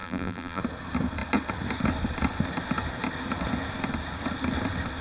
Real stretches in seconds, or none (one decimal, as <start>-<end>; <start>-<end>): 0.6-5.0